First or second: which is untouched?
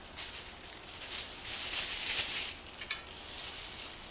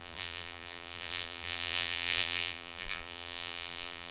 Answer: first